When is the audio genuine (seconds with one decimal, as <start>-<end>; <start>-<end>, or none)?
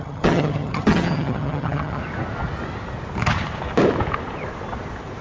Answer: 2.0-5.2